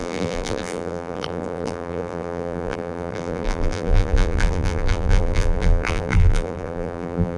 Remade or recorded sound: remade